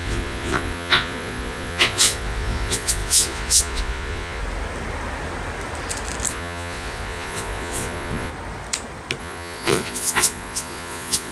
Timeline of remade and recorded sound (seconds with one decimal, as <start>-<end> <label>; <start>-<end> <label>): 0.0-4.4 remade; 4.4-6.3 recorded; 6.3-8.3 remade; 8.3-9.2 recorded; 9.2-11.3 remade